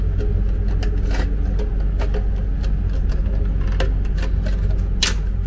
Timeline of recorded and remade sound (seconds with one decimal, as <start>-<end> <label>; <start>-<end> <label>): 0.0-5.5 recorded